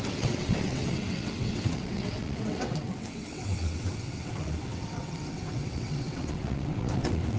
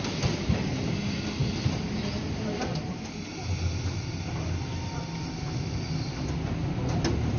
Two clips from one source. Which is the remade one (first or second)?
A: first